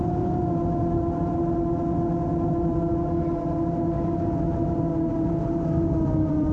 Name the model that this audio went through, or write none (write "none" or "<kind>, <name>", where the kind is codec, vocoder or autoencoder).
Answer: none